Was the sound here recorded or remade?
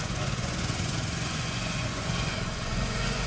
remade